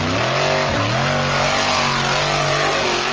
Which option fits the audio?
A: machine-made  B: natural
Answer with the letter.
B